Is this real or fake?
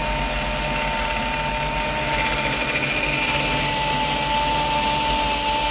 real